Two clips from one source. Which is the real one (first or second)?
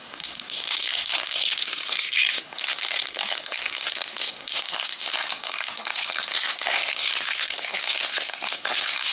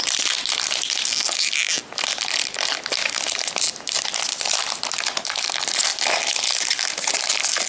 second